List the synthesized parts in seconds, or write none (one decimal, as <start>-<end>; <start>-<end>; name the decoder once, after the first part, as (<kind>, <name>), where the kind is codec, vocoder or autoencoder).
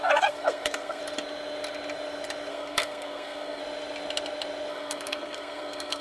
0.0-1.0 (codec, SNAC); 2.5-3.6; 4.7-6.0